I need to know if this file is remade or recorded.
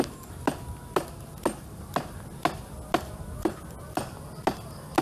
recorded